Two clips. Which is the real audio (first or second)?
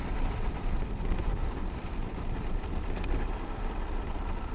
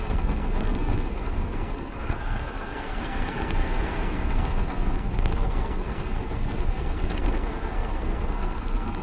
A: first